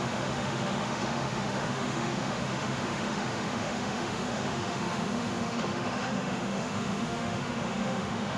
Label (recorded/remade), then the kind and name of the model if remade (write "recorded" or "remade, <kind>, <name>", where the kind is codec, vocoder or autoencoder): remade, autoencoder, DAC-VAE